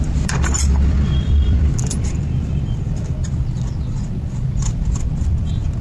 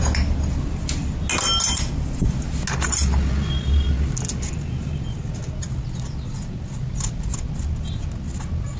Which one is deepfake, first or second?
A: first